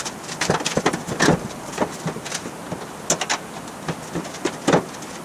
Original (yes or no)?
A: yes